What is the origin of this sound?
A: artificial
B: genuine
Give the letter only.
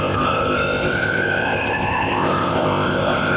A